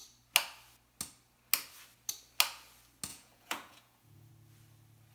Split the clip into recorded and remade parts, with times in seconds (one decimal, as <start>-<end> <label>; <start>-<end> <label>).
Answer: 0.0-3.1 recorded; 3.1-4.3 remade; 4.3-5.1 recorded